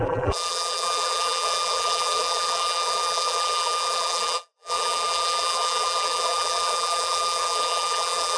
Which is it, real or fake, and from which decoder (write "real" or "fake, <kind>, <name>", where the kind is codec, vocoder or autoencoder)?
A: fake, vocoder, BigVGAN v2